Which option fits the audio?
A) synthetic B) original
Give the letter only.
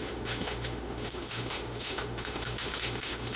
A